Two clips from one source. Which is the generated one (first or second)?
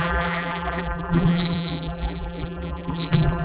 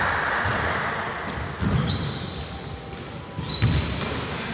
first